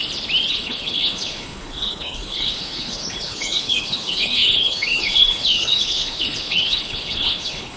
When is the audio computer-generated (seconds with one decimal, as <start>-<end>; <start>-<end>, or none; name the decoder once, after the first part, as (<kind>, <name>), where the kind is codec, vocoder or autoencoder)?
0.5-7.8 (codec, HILCodec)